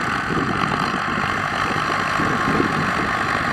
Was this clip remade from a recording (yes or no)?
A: no